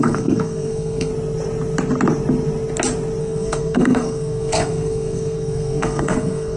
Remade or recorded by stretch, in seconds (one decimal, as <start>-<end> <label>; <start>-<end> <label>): 0.0-1.1 remade; 1.1-3.2 recorded; 3.2-6.6 remade